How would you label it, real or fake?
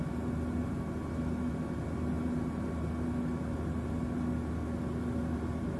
real